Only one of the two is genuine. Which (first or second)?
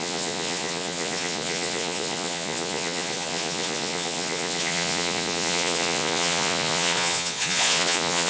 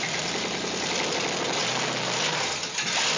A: second